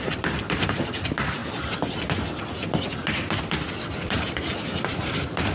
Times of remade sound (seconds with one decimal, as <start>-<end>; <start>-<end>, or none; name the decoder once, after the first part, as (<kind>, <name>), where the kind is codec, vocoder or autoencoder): 0.0-1.4 (vocoder, BigVGAN v2); 3.4-5.5